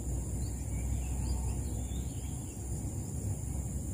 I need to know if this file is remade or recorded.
recorded